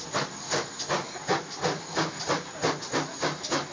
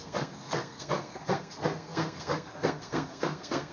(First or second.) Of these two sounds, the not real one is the second